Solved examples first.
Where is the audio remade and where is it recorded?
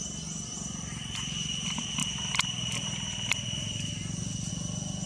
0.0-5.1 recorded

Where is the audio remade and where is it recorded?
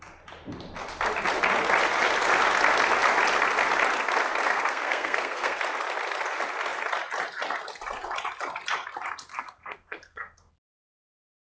0.0-4.5 recorded; 4.5-5.6 remade; 5.6-9.3 recorded; 9.3-10.5 remade; 10.5-11.5 recorded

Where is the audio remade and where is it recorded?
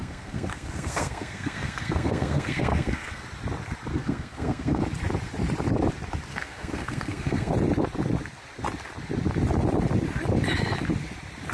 0.0-3.2 remade; 3.2-3.9 recorded; 3.9-4.8 remade; 4.8-6.3 recorded; 6.3-7.5 remade; 7.5-11.5 recorded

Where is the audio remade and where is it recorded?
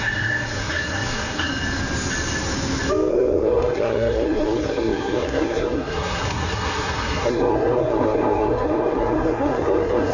0.0-1.5 remade; 1.5-3.1 recorded; 3.1-10.1 remade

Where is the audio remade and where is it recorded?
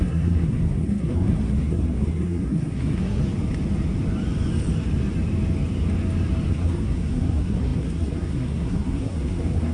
0.0-3.2 remade; 3.2-6.5 recorded; 6.5-9.7 remade